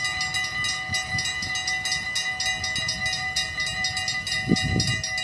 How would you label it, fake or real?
real